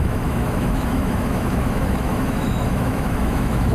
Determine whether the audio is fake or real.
fake